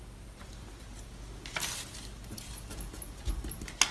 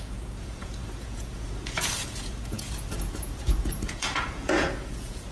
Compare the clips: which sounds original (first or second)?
first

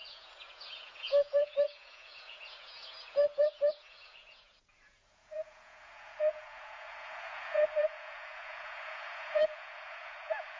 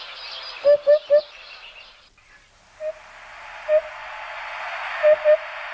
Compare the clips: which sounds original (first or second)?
second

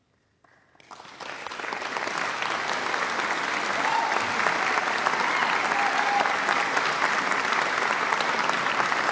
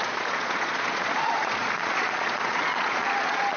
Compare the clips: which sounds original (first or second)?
first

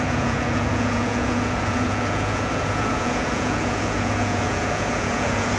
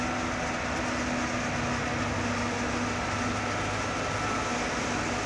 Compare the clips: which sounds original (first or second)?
second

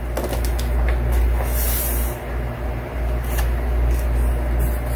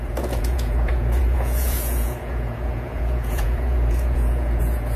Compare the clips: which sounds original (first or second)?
first